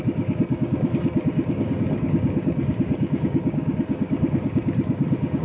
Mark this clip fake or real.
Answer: fake